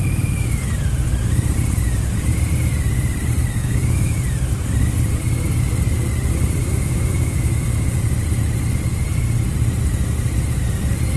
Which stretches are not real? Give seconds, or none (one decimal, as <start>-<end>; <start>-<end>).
3.4-4.2; 6.6-8.0